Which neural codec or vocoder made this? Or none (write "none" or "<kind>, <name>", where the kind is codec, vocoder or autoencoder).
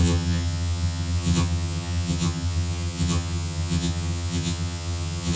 vocoder, HiFi-GAN